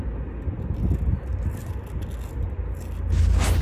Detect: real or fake real